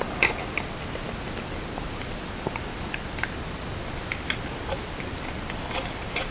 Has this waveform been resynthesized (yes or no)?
yes